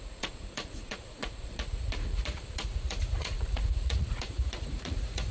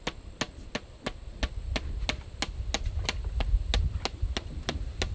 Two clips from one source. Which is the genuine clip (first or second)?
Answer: second